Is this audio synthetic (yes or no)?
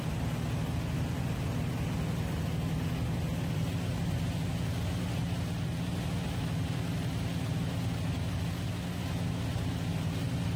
no